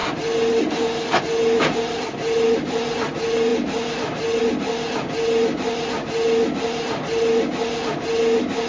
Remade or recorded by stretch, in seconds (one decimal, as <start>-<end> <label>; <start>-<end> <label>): 0.0-8.7 recorded